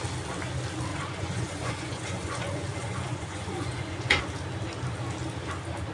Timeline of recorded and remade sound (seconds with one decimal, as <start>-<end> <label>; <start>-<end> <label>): 0.0-0.9 recorded; 0.9-4.2 remade; 4.2-5.9 recorded